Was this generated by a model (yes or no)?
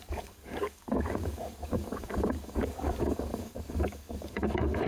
yes